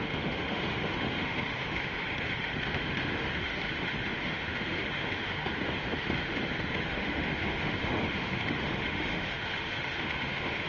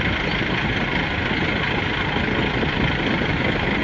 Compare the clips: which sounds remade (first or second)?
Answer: first